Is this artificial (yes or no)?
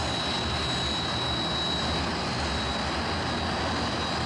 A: no